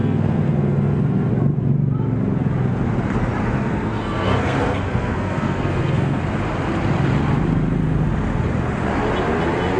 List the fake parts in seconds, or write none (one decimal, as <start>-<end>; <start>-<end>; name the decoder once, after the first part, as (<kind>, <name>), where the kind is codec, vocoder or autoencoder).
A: 0.0-1.3 (codec, SNAC); 3.4-6.2